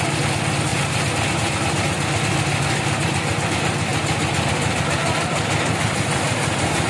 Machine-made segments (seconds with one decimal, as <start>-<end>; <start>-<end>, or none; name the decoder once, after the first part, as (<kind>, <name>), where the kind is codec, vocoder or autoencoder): 5.0-5.8 (vocoder, BigVGAN v2)